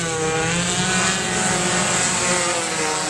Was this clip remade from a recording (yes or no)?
no